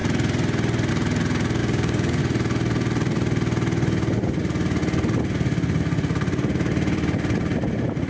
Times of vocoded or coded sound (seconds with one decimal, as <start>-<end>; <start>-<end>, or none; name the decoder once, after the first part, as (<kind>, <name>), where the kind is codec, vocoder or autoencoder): 1.6-2.2 (codec, DAC)